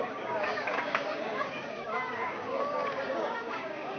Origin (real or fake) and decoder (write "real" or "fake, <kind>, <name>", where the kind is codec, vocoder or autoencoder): fake, codec, DAC